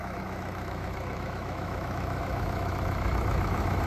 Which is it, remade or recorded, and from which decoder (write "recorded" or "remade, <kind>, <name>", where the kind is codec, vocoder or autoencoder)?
remade, autoencoder, DAC-VAE